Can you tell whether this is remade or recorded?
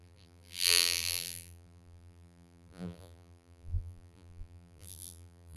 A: remade